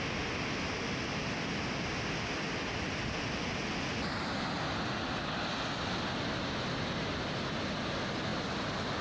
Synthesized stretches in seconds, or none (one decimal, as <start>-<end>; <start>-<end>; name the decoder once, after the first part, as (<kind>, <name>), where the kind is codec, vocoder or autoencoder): none